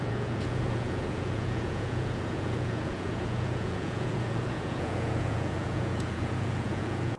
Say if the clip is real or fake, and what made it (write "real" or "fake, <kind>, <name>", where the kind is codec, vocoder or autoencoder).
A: fake, vocoder, Vocos